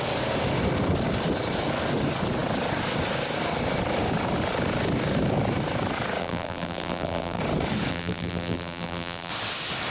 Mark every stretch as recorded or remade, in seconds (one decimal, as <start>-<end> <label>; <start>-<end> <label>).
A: 0.0-6.2 recorded; 6.2-7.4 remade; 7.4-7.9 recorded; 7.9-9.3 remade; 9.3-9.9 recorded